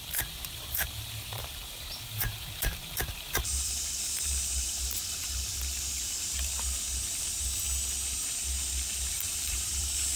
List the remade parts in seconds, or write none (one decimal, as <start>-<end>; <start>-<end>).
0.0-6.5; 9.1-10.2